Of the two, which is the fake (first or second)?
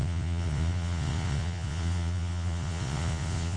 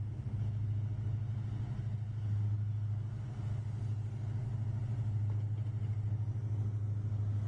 first